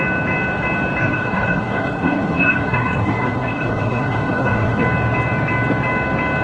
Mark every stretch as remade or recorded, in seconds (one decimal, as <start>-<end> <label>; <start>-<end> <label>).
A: 0.0-1.0 recorded; 1.0-4.8 remade; 4.8-6.4 recorded

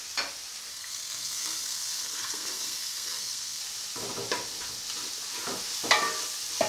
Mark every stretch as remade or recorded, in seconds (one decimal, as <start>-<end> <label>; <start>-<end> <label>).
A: 0.0-0.7 recorded; 0.7-3.6 remade; 3.6-6.7 recorded

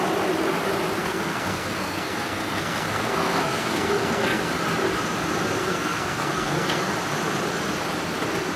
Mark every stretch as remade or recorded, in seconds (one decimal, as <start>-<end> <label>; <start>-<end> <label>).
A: 0.0-1.0 recorded; 1.0-4.5 remade; 4.5-5.6 recorded; 5.6-6.9 remade; 6.9-8.6 recorded